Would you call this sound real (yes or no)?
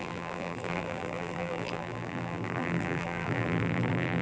no